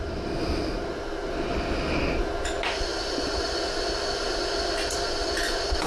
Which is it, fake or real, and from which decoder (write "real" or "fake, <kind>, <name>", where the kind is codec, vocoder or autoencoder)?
real